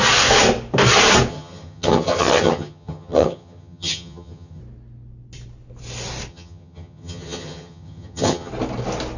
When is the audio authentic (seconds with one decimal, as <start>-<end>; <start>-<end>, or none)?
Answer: 0.0-1.3; 4.6-6.3; 8.5-9.2